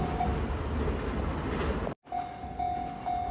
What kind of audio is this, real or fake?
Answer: real